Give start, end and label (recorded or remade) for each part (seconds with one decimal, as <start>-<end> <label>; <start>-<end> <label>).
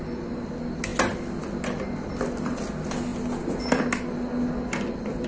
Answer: 0.0-5.3 recorded